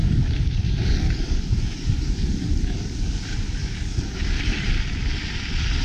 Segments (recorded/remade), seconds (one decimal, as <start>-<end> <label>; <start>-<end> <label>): 0.0-3.2 remade; 3.2-3.6 recorded; 3.6-4.7 remade; 4.7-5.8 recorded